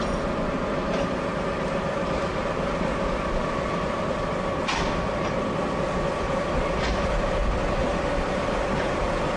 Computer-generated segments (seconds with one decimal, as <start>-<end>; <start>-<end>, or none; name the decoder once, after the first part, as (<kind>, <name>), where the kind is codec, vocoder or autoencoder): 7.8-9.4 (vocoder, BigVGAN v2)